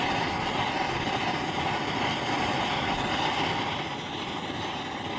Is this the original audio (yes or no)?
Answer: yes